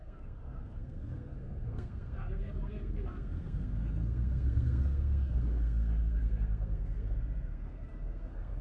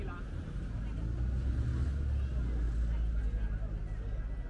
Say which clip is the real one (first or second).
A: second